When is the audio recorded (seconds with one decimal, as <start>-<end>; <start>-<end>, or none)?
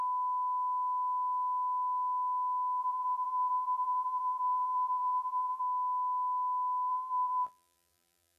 0.0-2.8; 5.6-6.9